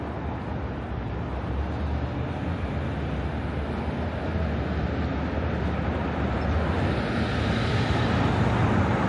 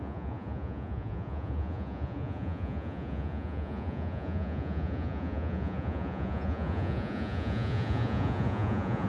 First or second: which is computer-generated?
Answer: second